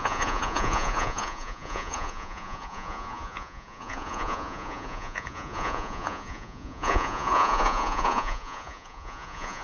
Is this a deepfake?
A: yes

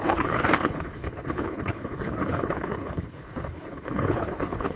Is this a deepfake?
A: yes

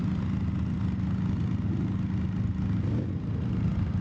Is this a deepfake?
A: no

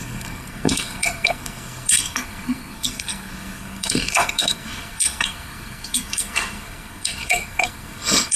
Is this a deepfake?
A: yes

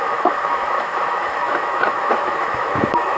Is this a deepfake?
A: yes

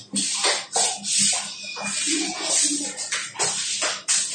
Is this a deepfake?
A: no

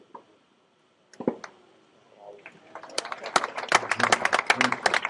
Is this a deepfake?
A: no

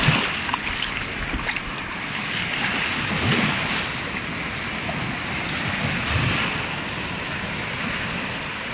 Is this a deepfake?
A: no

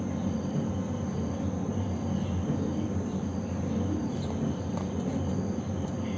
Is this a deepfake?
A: no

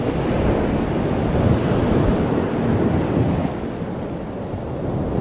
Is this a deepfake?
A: no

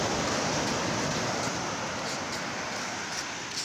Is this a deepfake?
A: no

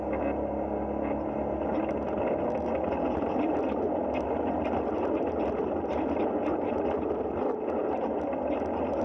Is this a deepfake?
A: no